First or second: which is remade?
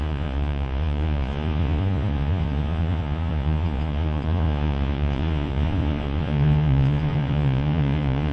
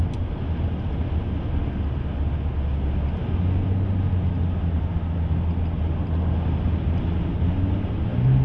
first